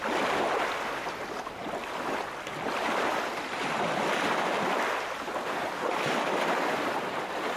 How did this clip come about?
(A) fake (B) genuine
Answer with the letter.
A